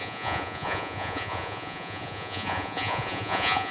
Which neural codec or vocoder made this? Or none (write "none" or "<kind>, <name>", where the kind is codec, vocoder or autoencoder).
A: vocoder, Vocos